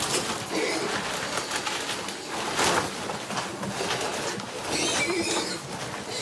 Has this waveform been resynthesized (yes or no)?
no